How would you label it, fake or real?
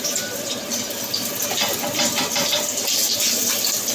real